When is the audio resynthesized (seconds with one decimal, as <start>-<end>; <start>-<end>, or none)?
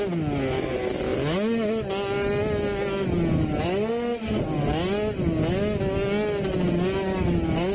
none